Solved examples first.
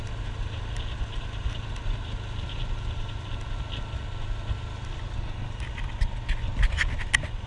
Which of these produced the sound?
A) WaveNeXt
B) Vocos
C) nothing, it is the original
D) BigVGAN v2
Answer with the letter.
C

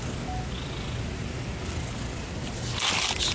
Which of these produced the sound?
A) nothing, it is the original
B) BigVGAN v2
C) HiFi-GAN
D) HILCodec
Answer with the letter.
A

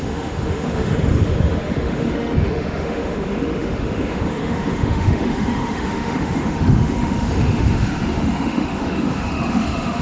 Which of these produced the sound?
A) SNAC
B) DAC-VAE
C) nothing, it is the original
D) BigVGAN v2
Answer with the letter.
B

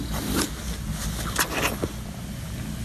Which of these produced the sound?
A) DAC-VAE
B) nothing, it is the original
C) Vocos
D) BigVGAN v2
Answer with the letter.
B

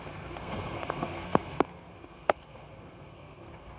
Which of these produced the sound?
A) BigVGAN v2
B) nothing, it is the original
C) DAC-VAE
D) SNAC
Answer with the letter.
D